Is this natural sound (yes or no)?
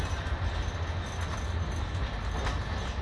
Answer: yes